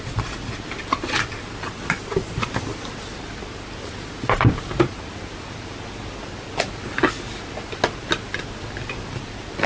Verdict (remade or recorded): recorded